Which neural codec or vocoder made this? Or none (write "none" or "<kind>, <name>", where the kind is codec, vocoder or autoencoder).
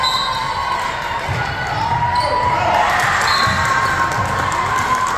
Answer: none